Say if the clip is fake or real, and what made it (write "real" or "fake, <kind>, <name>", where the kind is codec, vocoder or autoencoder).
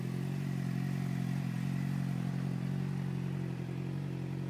real